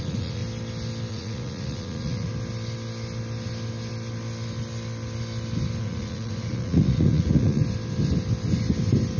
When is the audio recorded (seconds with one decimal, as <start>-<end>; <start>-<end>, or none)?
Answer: 0.4-1.1; 2.3-5.8; 7.6-9.2